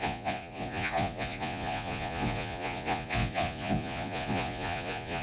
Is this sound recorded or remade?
remade